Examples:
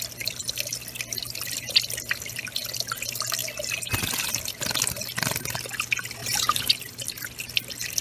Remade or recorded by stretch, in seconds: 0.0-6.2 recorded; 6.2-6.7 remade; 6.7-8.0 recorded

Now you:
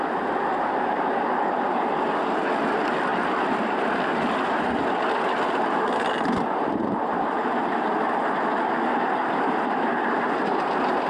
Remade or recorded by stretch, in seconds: 0.0-3.1 recorded; 3.1-4.9 remade; 4.9-11.1 recorded

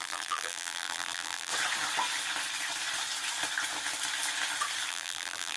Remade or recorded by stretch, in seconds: 0.0-1.5 remade; 1.5-4.9 recorded; 4.9-5.6 remade

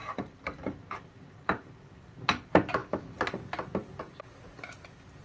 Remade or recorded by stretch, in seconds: 0.0-1.8 remade; 1.8-5.2 recorded

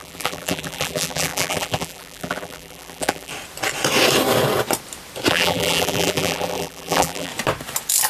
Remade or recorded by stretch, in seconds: 0.0-3.3 remade; 3.3-5.3 recorded; 5.3-7.3 remade; 7.3-8.1 recorded

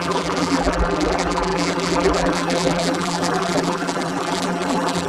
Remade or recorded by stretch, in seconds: 0.0-5.1 remade

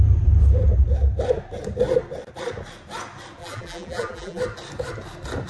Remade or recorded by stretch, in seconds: 0.0-3.4 recorded; 3.4-4.4 remade; 4.4-5.5 recorded

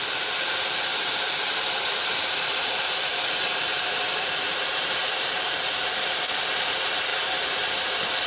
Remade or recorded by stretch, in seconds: 0.0-0.9 recorded; 0.9-5.5 remade; 5.5-7.1 recorded; 7.1-7.8 remade; 7.8-8.3 recorded